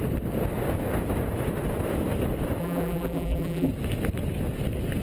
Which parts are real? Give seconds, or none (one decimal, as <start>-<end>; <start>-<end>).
0.0-2.6; 3.7-5.0